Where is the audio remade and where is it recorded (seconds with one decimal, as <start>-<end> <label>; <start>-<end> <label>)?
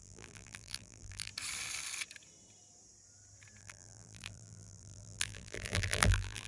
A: 0.0-1.3 remade; 1.3-3.6 recorded; 3.6-6.5 remade